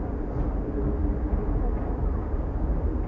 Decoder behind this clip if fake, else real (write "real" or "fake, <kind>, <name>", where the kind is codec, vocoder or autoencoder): real